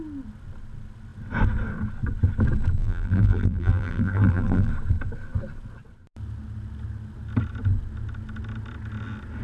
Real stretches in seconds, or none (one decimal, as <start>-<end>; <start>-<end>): 0.0-2.8; 4.7-9.4